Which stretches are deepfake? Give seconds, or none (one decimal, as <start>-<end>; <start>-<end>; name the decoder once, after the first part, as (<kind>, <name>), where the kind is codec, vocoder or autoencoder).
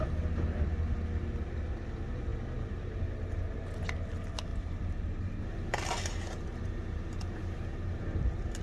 4.5-8.0 (vocoder, BigVGAN v2)